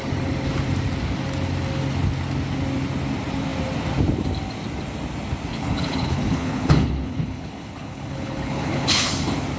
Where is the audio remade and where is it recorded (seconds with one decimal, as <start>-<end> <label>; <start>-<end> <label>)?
0.0-5.5 recorded; 5.5-9.1 remade; 9.1-9.6 recorded

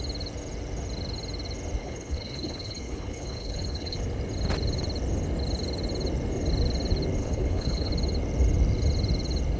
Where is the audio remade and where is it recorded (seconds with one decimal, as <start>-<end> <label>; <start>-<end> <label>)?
0.0-1.8 recorded; 1.8-4.0 remade; 4.0-7.2 recorded; 7.2-7.9 remade; 7.9-9.6 recorded

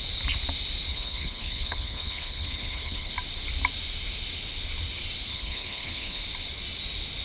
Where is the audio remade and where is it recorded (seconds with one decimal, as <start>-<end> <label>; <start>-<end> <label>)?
0.0-0.9 recorded; 0.9-3.1 remade; 3.1-5.3 recorded; 5.3-6.2 remade; 6.2-7.2 recorded

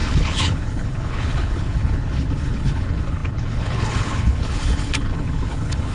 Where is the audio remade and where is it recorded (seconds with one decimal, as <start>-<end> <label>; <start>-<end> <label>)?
0.0-5.9 remade

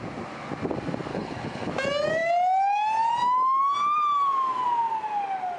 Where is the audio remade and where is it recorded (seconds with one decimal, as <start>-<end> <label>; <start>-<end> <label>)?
0.0-1.1 recorded; 1.1-1.7 remade; 1.7-5.6 recorded

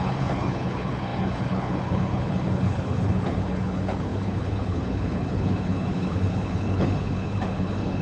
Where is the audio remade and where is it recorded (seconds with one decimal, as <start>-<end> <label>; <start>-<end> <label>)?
0.0-8.0 remade

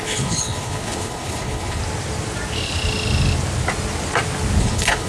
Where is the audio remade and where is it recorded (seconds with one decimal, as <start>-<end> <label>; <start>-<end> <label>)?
0.0-1.8 remade; 1.8-4.6 recorded; 4.6-5.1 remade